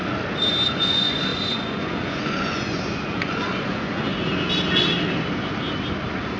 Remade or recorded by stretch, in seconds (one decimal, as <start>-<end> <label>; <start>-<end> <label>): 0.0-0.7 recorded; 0.7-4.1 remade; 4.1-6.4 recorded